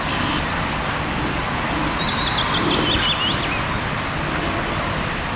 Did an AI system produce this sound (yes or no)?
no